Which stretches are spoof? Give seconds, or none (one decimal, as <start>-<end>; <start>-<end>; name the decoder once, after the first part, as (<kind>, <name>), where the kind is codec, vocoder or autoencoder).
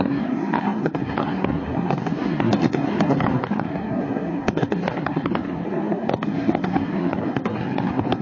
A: 0.0-8.2 (codec, SNAC)